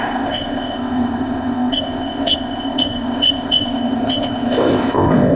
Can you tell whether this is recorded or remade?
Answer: remade